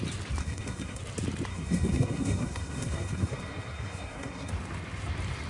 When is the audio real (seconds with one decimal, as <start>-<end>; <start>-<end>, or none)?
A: 0.0-0.4; 1.0-1.5; 4.5-5.5